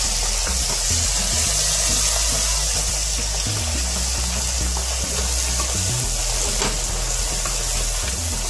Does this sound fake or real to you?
real